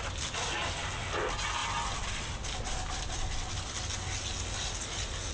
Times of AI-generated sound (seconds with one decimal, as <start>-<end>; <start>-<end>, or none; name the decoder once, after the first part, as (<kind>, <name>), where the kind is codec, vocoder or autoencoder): none